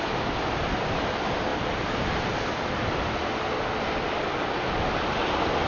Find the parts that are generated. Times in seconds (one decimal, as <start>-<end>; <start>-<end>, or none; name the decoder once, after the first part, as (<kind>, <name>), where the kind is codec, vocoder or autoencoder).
none